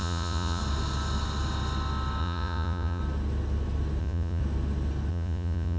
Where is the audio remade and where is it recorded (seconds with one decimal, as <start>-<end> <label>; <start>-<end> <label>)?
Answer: 0.0-0.6 remade; 0.6-2.2 recorded; 2.2-3.0 remade; 3.0-4.0 recorded; 4.0-4.4 remade; 4.4-5.1 recorded; 5.1-5.8 remade